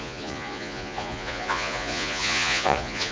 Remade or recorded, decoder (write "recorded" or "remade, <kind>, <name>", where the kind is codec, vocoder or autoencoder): remade, vocoder, Vocos